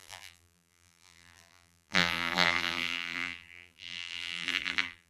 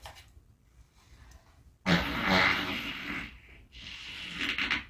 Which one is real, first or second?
second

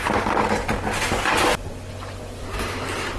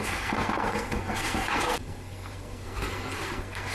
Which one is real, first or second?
first